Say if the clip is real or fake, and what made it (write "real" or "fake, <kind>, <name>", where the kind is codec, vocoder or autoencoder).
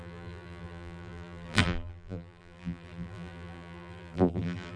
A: fake, vocoder, BigVGAN v2